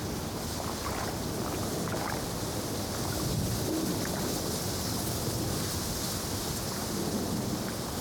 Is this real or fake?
real